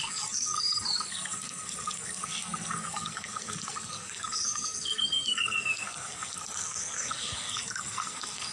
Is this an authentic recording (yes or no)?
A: no